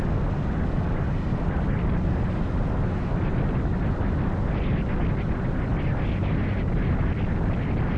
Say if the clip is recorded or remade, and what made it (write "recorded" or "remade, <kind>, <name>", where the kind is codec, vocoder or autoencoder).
recorded